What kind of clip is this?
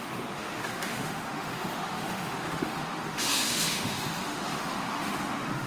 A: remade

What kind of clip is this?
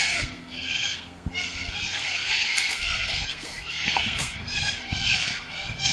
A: remade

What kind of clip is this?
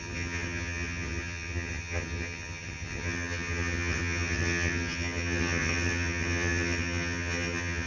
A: remade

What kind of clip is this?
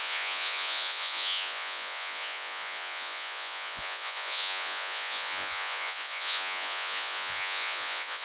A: remade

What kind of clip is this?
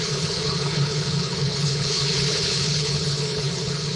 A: remade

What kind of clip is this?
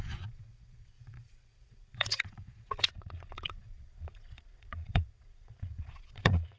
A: remade